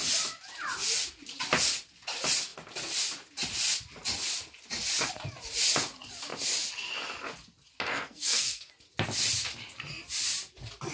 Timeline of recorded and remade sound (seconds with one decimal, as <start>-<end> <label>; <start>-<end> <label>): 0.0-7.9 recorded; 7.9-8.7 remade; 8.7-10.9 recorded